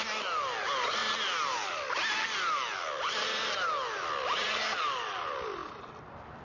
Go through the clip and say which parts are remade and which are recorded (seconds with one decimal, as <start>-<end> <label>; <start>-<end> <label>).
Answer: 0.0-6.4 recorded